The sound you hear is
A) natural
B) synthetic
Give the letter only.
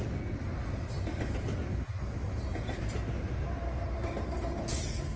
A